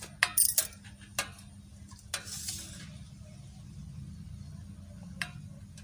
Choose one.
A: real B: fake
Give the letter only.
A